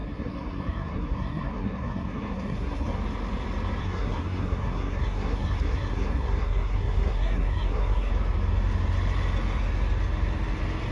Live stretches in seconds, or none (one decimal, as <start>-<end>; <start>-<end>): 3.0-3.8; 8.1-10.9